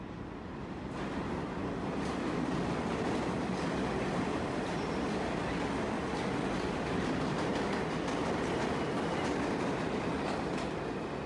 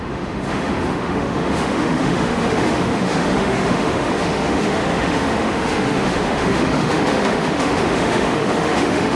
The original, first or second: first